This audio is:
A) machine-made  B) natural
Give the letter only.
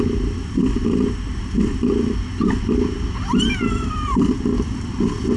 B